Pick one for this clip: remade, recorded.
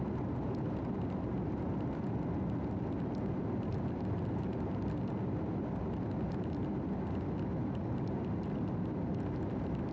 recorded